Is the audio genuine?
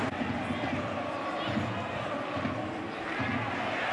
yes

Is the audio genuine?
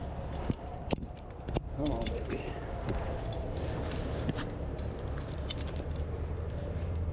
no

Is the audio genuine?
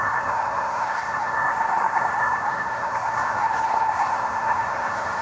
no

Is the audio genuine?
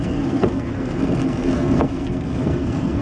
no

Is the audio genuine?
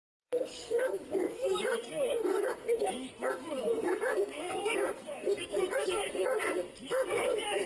no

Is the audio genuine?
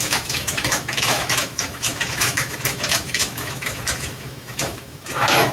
no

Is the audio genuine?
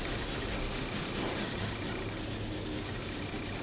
yes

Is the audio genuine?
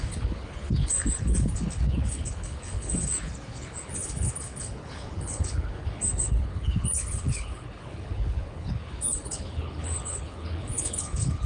no